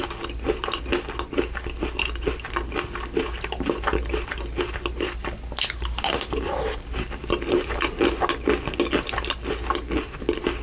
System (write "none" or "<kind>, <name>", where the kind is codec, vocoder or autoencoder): none